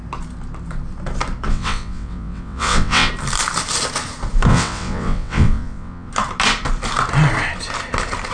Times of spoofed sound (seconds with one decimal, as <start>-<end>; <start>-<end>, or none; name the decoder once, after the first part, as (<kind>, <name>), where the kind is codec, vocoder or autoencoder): 1.5-3.1 (vocoder, WaveNeXt); 4.5-6.1